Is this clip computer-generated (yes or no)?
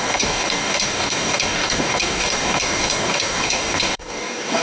yes